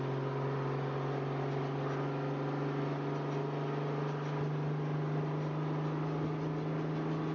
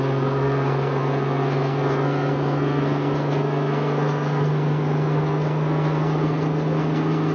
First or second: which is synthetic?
second